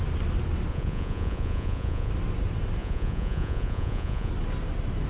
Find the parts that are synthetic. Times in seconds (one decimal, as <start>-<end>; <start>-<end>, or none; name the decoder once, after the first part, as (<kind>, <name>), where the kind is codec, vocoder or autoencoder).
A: 0.7-2.1 (vocoder, Vocos); 2.8-4.3